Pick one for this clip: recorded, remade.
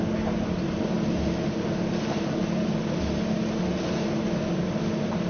recorded